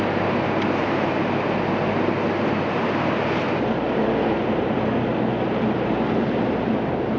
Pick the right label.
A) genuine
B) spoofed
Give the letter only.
A